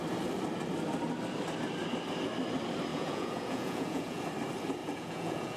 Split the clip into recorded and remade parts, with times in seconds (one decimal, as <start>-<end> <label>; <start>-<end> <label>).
0.0-2.9 recorded; 2.9-4.2 remade; 4.2-4.8 recorded; 4.8-5.6 remade